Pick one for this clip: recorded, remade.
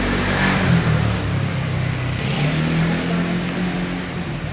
recorded